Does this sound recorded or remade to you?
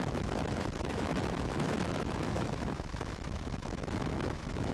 remade